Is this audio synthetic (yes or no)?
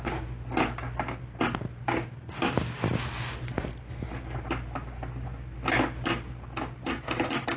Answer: no